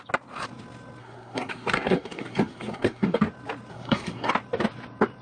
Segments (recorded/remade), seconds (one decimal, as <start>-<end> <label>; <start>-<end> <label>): 0.0-1.0 recorded; 1.0-3.2 remade; 3.2-3.7 recorded; 3.7-4.3 remade; 4.3-5.2 recorded